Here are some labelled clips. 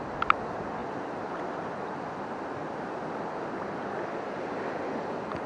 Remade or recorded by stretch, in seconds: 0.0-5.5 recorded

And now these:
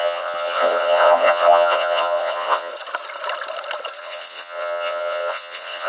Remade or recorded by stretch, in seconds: 0.0-2.7 remade; 2.7-4.0 recorded; 4.0-5.9 remade

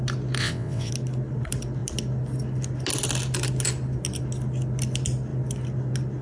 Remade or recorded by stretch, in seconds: 0.0-0.4 recorded; 0.4-0.9 remade; 0.9-6.2 recorded

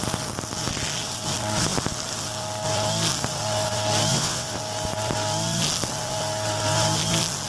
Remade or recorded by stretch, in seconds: 0.0-4.1 recorded; 4.1-4.6 remade; 4.6-7.5 recorded